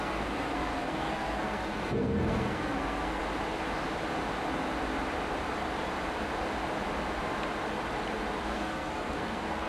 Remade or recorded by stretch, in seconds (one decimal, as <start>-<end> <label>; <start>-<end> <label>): 0.0-3.2 remade; 3.2-8.4 recorded; 8.4-9.7 remade